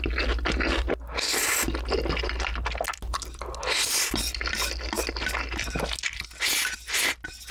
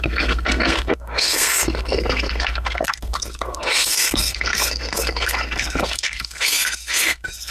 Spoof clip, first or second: second